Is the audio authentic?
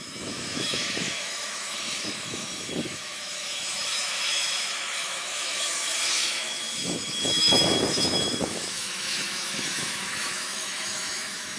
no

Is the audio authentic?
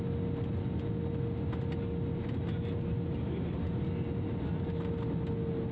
yes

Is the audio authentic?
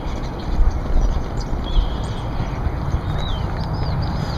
yes